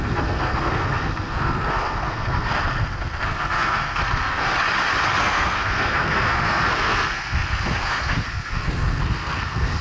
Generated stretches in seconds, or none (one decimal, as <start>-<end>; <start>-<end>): 0.0-4.5; 5.2-9.8